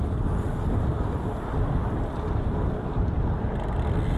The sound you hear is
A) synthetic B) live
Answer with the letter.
B